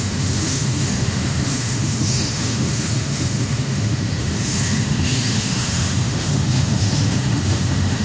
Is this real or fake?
fake